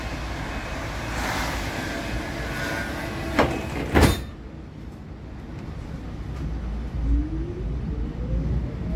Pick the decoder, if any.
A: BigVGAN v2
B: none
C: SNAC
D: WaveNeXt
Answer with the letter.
B